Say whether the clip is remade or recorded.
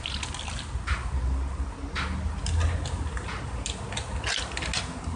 recorded